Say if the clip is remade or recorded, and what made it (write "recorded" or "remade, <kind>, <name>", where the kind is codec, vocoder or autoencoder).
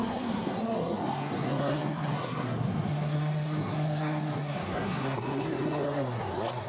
remade, codec, SNAC